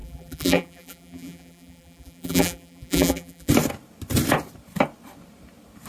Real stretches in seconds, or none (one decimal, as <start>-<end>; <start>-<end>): 3.5-5.9